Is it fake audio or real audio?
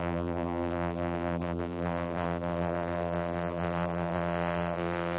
fake